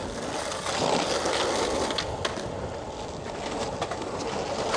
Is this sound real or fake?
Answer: real